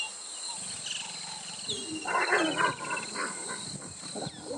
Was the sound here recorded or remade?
recorded